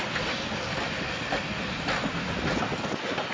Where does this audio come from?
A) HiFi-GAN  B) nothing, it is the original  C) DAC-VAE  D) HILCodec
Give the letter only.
B